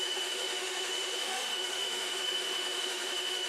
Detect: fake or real fake